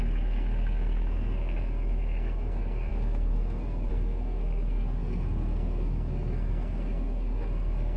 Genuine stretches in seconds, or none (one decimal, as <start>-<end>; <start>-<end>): none